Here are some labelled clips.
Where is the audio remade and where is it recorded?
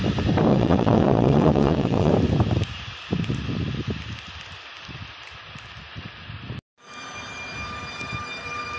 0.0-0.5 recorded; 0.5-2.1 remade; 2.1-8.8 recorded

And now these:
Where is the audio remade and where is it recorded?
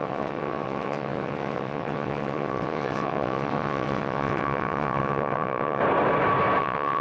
0.0-5.8 remade; 5.8-6.6 recorded; 6.6-7.0 remade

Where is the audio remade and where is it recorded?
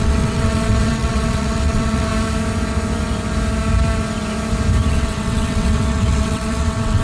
0.0-2.1 remade; 2.1-4.9 recorded; 4.9-7.0 remade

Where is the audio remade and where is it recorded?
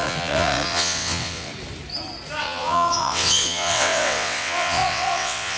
0.0-1.5 remade; 1.5-2.4 recorded; 2.4-5.6 remade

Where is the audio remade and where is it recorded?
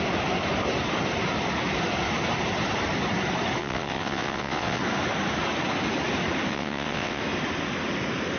0.0-3.6 recorded; 3.6-4.8 remade; 4.8-6.5 recorded; 6.5-7.2 remade; 7.2-8.4 recorded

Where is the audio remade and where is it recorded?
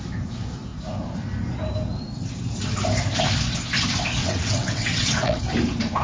0.0-4.2 recorded; 4.2-5.4 remade; 5.4-6.0 recorded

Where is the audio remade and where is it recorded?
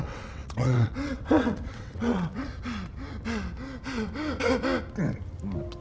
0.0-2.5 remade; 2.5-5.8 recorded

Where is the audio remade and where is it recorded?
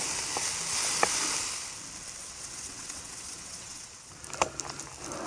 0.0-2.2 recorded; 2.2-4.1 remade; 4.1-5.3 recorded